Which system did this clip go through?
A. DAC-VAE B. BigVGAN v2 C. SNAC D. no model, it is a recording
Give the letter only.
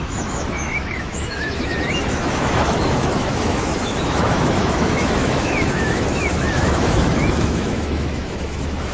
A